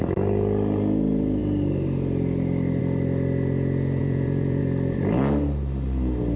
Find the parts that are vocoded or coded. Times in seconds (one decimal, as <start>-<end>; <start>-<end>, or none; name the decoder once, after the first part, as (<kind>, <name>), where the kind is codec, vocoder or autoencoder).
4.0-4.6 (vocoder, Vocos)